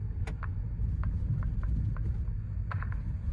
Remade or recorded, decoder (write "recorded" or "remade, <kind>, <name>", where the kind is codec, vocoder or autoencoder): recorded